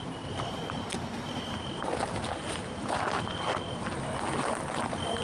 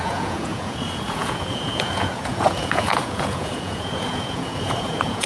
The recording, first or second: first